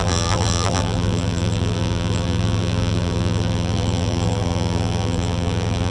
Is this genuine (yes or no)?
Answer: no